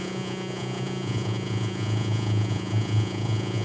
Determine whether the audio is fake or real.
fake